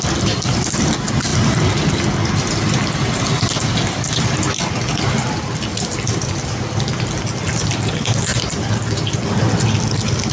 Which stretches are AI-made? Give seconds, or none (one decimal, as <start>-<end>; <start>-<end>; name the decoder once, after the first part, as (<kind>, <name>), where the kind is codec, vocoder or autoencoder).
none